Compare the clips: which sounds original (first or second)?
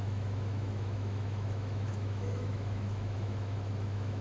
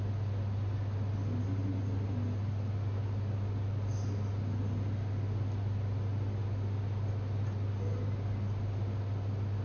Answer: second